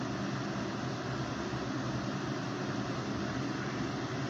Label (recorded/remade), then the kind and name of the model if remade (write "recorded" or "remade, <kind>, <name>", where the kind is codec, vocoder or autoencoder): recorded